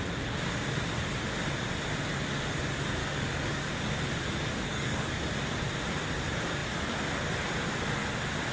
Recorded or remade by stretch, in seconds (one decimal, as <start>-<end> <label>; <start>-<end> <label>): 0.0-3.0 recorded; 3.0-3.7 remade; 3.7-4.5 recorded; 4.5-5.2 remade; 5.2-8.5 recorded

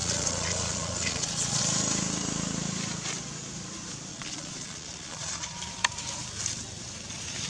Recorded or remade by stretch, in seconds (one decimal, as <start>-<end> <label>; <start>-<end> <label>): 0.0-1.6 remade; 1.6-4.1 recorded; 4.1-5.6 remade; 5.6-7.5 recorded

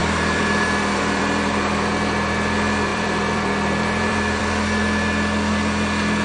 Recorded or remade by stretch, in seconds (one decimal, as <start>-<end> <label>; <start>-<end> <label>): 0.0-1.5 remade; 1.5-2.9 recorded; 2.9-4.4 remade; 4.4-6.2 recorded

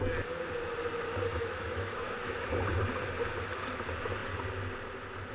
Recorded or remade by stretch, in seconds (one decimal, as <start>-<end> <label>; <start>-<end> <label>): 0.0-1.3 recorded; 1.3-2.3 remade; 2.3-5.3 recorded

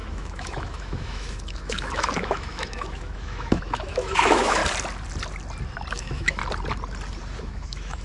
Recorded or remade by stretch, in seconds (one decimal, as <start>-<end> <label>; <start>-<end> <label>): 0.0-4.6 remade; 4.6-5.9 recorded; 5.9-6.4 remade; 6.4-7.4 recorded; 7.4-8.0 remade

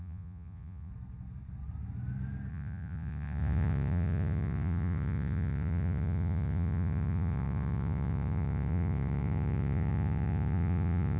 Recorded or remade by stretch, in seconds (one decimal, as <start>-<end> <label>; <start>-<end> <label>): 0.0-0.9 remade; 0.9-2.5 recorded; 2.5-11.2 remade

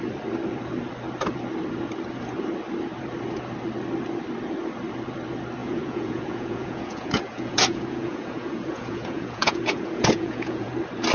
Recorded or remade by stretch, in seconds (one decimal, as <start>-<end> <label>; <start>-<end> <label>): 0.0-5.6 recorded; 5.6-10.7 remade; 10.7-11.1 recorded

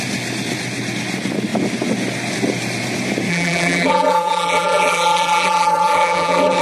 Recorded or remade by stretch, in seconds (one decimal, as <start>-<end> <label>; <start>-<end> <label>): 0.0-3.3 recorded; 3.3-6.6 remade